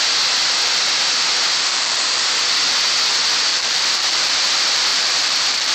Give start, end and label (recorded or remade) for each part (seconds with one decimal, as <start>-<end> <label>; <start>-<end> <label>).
0.0-1.7 recorded; 1.7-2.2 remade; 2.2-3.5 recorded; 3.5-4.3 remade; 4.3-4.9 recorded; 4.9-5.7 remade